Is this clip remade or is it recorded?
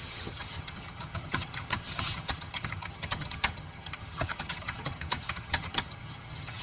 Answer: remade